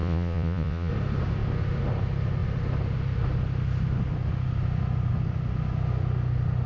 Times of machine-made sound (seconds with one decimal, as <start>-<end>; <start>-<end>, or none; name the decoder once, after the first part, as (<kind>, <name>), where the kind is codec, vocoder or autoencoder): 0.0-0.9 (vocoder, Vocos)